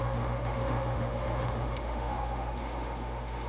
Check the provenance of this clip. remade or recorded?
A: remade